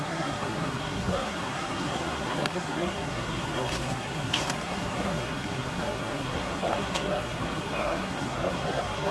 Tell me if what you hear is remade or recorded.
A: remade